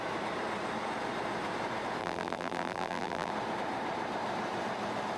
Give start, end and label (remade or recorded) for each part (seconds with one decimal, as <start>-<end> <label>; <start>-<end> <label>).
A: 0.0-2.0 recorded; 2.0-3.3 remade; 3.3-5.2 recorded

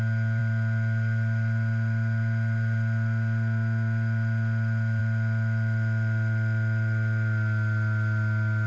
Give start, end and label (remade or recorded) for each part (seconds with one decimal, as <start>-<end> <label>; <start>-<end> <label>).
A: 0.0-8.7 recorded

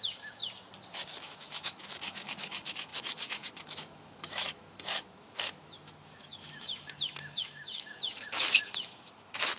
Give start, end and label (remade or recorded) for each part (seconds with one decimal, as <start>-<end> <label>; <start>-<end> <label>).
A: 0.0-0.4 remade; 0.4-1.2 recorded; 1.2-9.6 remade